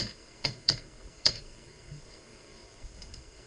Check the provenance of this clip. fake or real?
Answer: fake